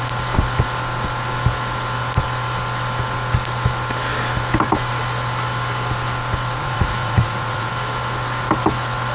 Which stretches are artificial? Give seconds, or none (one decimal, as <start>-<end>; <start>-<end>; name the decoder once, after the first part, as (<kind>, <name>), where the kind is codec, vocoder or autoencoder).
6.6-7.7 (vocoder, Vocos)